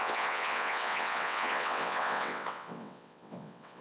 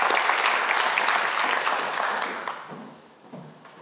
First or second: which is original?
second